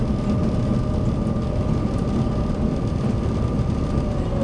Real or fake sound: real